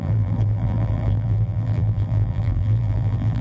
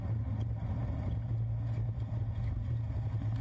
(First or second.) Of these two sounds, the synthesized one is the first